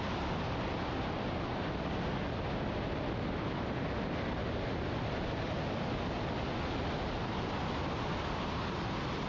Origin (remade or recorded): recorded